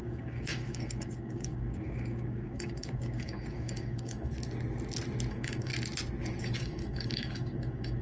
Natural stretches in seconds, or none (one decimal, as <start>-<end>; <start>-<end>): 4.3-5.3; 5.7-6.4